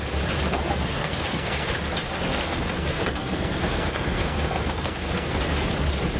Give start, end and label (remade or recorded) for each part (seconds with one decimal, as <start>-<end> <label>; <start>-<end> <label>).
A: 0.0-0.5 recorded; 0.5-1.7 remade; 1.7-2.3 recorded; 2.3-5.4 remade; 5.4-6.2 recorded